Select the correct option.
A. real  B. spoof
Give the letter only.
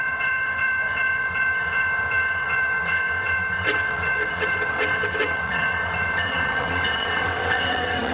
B